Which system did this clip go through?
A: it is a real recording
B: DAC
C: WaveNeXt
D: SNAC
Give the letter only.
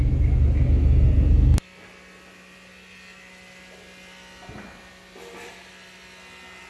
A